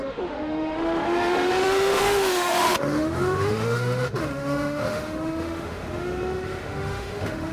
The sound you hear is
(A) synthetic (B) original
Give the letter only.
A